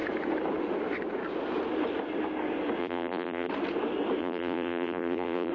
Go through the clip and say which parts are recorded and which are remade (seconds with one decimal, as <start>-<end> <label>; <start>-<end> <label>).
0.0-2.8 recorded; 2.8-3.5 remade; 3.5-4.2 recorded; 4.2-5.5 remade